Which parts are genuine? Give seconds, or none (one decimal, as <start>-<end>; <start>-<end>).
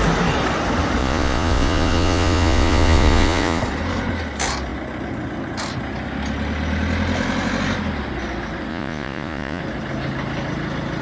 0.0-1.0; 3.6-8.7; 9.6-11.0